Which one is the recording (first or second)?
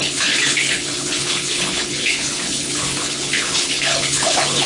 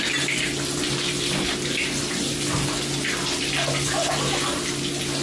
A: second